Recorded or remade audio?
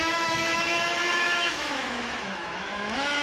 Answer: remade